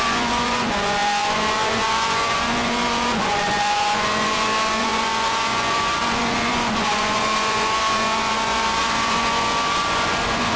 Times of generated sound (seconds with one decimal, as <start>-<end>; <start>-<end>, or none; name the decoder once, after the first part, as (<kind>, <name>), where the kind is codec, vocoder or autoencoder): 0.0-10.6 (vocoder, Vocos)